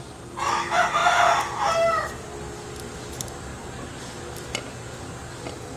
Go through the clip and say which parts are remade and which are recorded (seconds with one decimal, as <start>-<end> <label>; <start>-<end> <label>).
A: 0.0-5.8 recorded